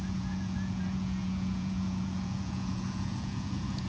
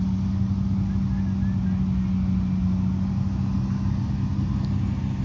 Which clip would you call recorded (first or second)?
second